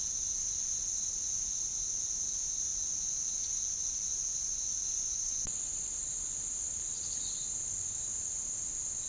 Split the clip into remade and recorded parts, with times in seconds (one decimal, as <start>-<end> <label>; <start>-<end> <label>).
0.0-9.1 recorded